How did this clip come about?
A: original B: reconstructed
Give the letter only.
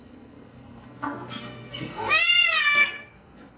B